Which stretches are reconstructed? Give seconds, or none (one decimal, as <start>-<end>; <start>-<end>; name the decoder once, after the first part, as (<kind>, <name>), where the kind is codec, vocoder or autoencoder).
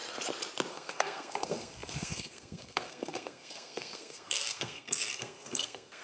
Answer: 0.7-6.0 (codec, SNAC)